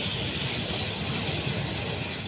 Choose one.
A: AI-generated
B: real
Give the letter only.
B